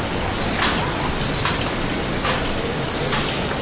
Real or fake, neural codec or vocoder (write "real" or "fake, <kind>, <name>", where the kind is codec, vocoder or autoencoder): real